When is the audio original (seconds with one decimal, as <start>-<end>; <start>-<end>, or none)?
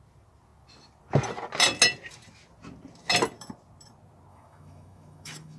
0.0-4.3